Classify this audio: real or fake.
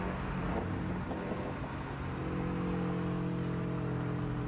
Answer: real